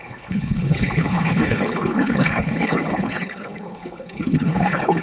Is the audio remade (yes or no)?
yes